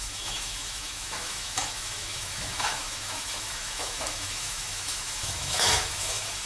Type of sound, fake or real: fake